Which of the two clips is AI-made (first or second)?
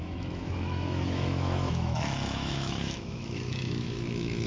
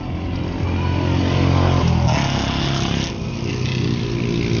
first